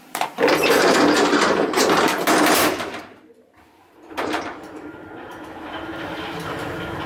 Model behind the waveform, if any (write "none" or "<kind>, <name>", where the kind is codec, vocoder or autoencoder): vocoder, BigVGAN v2